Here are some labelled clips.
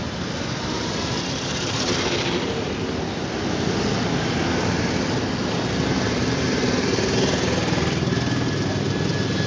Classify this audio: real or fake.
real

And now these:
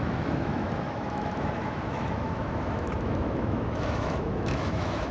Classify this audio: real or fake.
fake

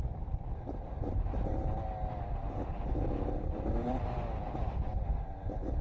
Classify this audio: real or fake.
real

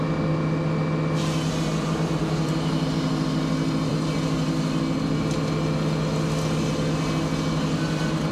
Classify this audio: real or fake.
real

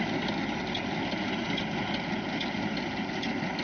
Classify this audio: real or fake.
real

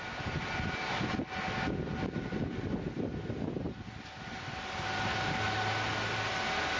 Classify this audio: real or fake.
real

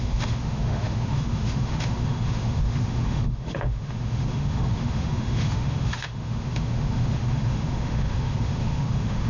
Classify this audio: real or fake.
fake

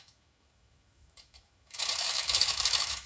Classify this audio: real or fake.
fake